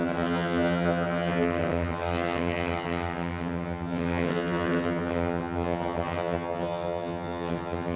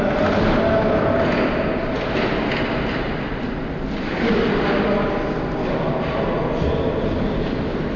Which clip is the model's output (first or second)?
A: first